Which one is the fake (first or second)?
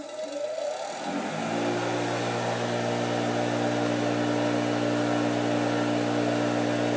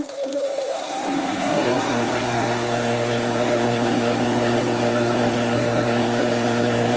second